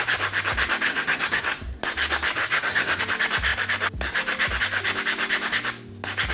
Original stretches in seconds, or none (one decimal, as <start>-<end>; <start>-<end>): 0.0-0.9; 1.8-2.4; 3.0-6.3